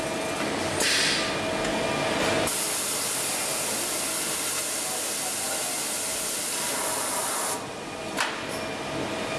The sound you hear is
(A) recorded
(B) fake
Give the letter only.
A